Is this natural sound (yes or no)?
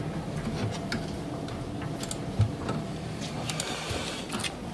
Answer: yes